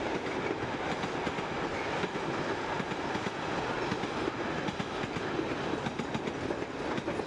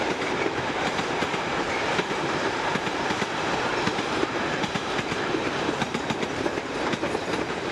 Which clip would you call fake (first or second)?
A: second